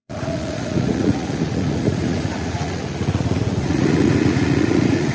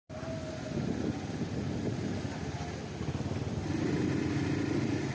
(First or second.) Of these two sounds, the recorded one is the second